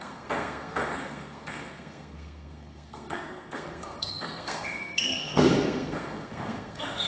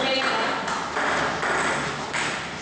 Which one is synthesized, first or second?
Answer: first